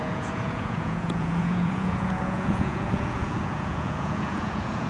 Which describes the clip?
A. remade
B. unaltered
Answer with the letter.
A